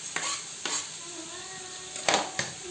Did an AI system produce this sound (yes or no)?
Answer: no